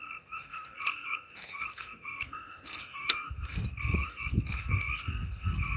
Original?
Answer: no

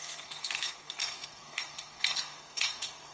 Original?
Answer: no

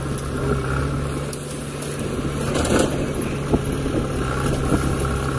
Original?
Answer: yes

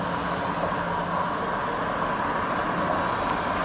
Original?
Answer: yes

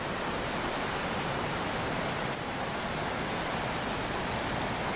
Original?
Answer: yes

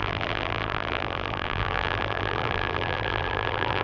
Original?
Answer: no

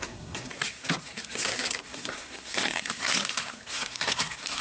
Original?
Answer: no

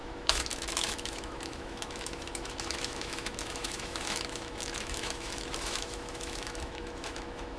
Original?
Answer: no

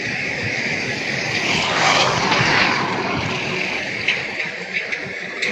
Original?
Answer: no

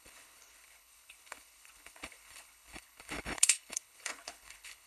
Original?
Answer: no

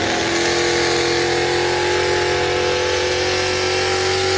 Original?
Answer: yes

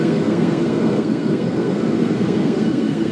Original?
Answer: no